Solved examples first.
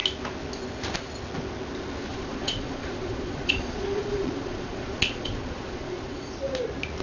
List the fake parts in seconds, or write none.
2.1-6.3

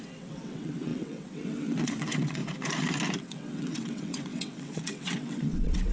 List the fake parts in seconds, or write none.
0.0-2.4; 3.2-5.9

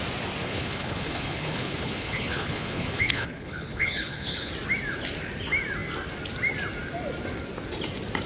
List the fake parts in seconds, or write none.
0.4-4.5

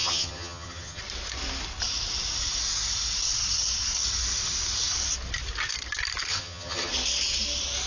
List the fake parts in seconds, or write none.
0.0-1.0; 6.3-6.9

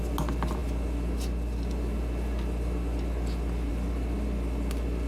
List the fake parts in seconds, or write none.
none